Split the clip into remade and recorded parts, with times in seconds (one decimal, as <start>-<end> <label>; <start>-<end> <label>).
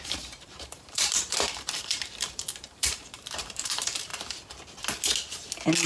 0.0-4.1 remade; 4.1-5.9 recorded